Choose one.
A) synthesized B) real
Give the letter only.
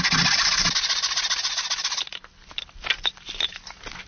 B